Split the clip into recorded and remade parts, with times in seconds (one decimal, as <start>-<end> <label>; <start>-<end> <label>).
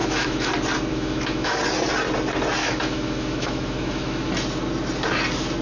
0.0-0.5 remade; 0.5-0.9 recorded; 0.9-1.6 remade; 1.6-2.6 recorded; 2.6-4.3 remade; 4.3-5.6 recorded